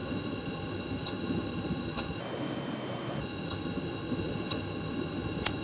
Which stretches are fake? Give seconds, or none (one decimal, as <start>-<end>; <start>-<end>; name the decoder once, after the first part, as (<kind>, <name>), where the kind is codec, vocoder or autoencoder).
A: 0.0-2.2 (vocoder, HiFi-GAN); 3.2-5.6